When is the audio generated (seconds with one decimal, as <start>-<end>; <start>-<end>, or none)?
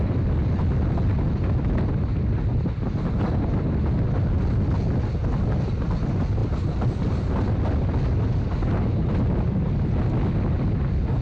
6.4-7.2